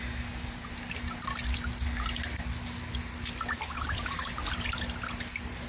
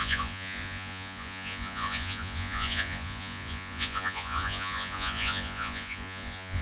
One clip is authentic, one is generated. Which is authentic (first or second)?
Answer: first